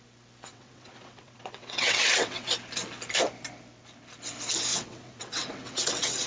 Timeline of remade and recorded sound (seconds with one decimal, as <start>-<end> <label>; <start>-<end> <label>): 0.0-0.5 recorded; 0.5-2.5 remade; 2.5-4.7 recorded; 4.7-6.3 remade